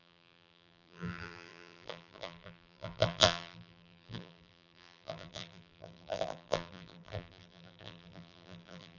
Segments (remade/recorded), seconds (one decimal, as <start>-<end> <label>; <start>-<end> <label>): 0.0-9.0 remade